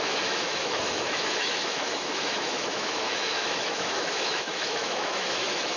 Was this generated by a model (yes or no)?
yes